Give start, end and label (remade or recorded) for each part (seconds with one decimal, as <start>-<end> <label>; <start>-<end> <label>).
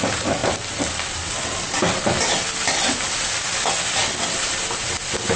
0.0-4.0 remade; 4.0-4.8 recorded; 4.8-5.4 remade